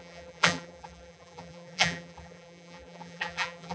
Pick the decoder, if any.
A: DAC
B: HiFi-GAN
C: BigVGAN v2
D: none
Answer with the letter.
C